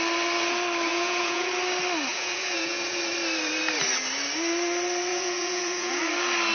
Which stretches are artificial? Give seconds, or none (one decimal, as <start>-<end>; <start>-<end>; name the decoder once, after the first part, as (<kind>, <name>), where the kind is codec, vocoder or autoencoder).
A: 0.9-1.5 (vocoder, Vocos); 2.1-3.0; 5.1-6.0